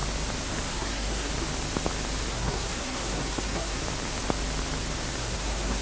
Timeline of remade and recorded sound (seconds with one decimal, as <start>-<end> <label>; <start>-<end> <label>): 0.0-0.7 recorded; 0.7-1.3 remade; 1.3-2.3 recorded; 2.3-3.8 remade; 3.8-5.2 recorded; 5.2-5.8 remade